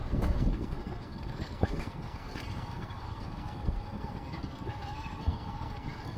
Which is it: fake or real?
fake